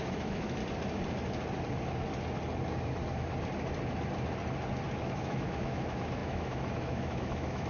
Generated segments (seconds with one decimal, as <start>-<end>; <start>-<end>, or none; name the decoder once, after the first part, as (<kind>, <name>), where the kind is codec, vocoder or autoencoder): 0.0-0.6 (autoencoder, DAC-VAE); 5.0-7.7